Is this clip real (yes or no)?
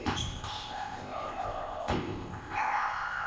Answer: no